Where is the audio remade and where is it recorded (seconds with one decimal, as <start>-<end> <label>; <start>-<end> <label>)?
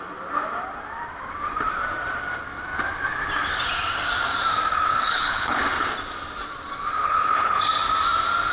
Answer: 0.0-4.7 recorded; 4.7-5.6 remade; 5.6-7.0 recorded; 7.0-7.6 remade; 7.6-8.5 recorded